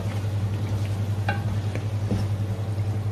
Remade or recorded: recorded